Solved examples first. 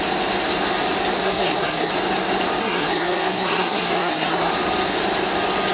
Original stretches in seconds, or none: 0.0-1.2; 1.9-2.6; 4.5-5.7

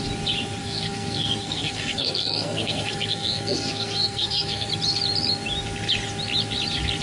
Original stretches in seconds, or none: 0.0-0.6; 4.7-7.0

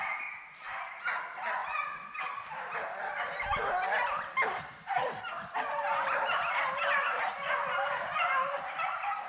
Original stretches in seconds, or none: 0.0-9.3

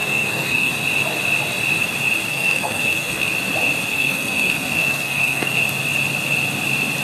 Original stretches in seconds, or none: 0.7-2.3; 3.3-3.9; 5.6-7.0